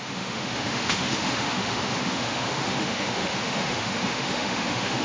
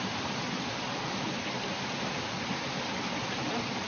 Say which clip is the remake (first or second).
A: first